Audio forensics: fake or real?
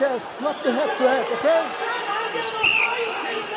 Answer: real